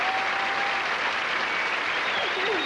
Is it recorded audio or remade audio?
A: recorded